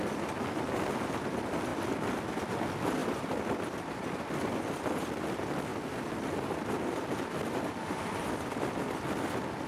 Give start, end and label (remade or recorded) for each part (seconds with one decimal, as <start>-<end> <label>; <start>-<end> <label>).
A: 0.0-3.0 recorded; 3.0-4.2 remade; 4.2-5.7 recorded; 5.7-9.7 remade